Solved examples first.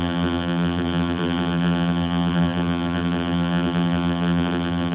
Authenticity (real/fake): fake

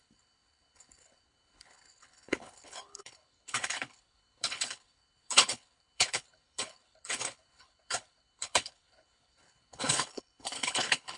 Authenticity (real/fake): fake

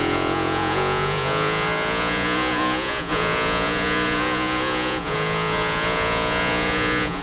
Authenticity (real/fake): fake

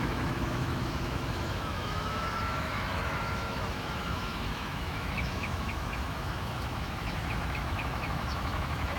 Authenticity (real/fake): fake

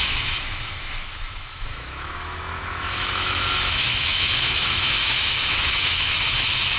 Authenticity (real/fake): fake